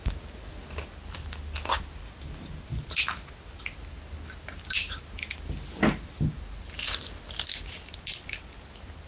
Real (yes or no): yes